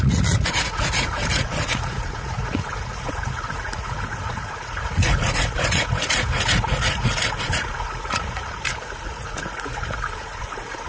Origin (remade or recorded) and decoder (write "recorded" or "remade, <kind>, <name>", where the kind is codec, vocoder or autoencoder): remade, vocoder, Vocos